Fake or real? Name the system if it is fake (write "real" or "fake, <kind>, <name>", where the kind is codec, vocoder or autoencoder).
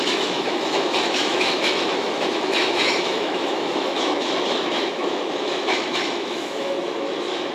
fake, autoencoder, DAC-VAE